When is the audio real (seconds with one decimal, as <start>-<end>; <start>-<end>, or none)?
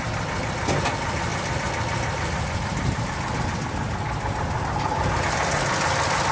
0.0-6.3